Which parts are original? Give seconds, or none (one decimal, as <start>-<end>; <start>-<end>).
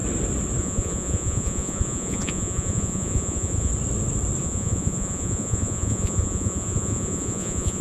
0.0-0.6; 3.7-4.4